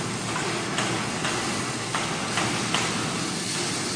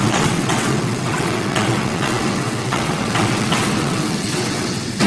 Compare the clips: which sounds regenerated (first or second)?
second